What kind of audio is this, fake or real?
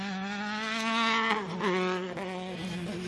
real